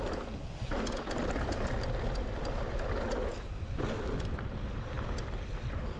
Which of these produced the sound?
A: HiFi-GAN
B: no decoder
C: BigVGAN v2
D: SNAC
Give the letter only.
B